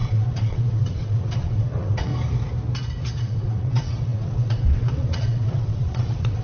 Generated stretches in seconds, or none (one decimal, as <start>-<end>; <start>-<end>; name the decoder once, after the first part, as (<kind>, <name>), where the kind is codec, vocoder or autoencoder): 0.0-2.1 (vocoder, WaveNeXt); 3.2-6.4